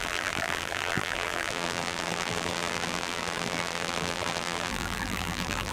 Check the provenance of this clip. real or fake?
fake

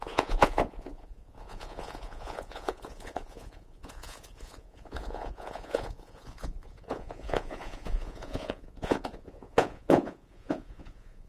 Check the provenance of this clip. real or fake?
fake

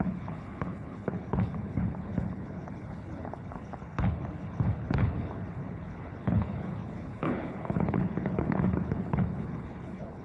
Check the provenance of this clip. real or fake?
fake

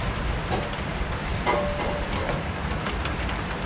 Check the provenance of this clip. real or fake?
real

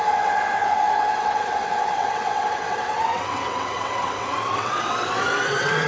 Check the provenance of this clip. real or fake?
fake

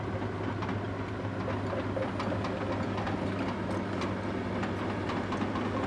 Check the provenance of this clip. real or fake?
real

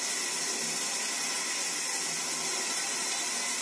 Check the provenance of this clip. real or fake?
real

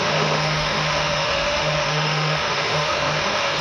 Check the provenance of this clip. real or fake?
fake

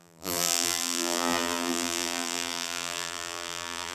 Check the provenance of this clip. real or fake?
fake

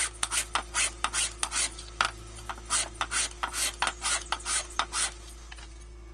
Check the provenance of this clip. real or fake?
real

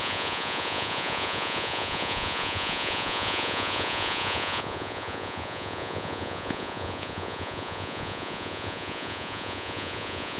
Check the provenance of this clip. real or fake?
fake